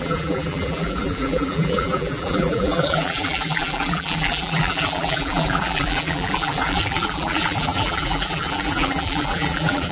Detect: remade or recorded remade